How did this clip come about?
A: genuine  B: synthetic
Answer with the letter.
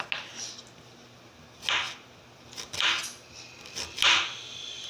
A